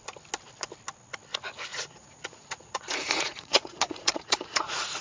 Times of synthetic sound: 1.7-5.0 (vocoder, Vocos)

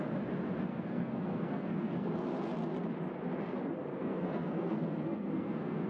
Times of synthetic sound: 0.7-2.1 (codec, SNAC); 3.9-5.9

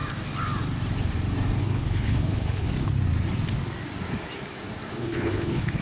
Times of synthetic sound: 1.6-2.7 (codec, HILCodec); 4.9-5.8

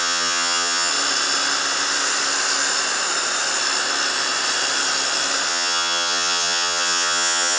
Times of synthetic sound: 0.0-0.9 (vocoder, HiFi-GAN); 5.5-7.6

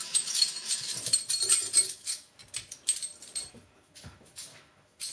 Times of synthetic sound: 0.0-0.9 (autoencoder, DAC-VAE); 1.9-2.4; 3.5-5.1

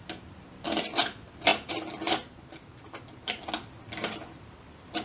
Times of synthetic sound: none

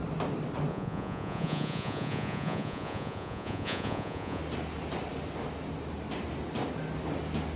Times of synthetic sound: 0.7-4.4 (vocoder, Vocos)